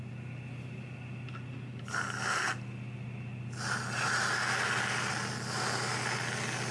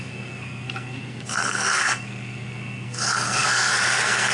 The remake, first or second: second